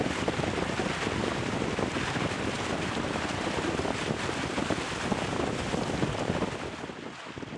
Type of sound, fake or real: real